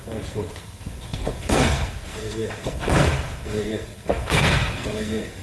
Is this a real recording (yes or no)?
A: no